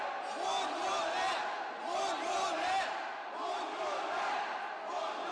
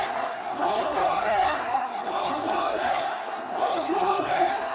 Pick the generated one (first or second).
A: second